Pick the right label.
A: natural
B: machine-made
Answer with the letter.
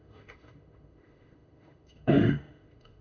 B